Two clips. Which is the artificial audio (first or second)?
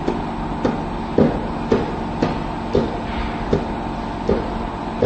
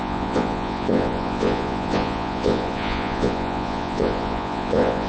second